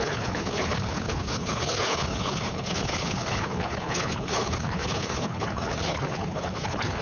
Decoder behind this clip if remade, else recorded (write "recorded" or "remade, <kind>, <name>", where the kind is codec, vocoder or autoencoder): remade, codec, HILCodec